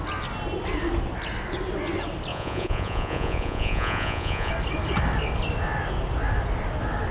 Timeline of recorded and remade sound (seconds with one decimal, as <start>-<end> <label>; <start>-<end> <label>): 0.0-2.3 recorded; 2.3-4.5 remade; 4.5-7.1 recorded

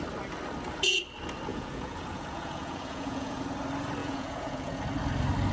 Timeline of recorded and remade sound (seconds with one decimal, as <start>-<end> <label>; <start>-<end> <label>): 0.0-1.5 recorded; 1.5-3.4 remade; 3.4-4.0 recorded; 4.0-4.8 remade; 4.8-5.5 recorded